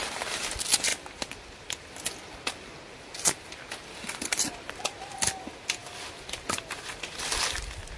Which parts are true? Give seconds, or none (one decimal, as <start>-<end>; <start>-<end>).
0.0-8.0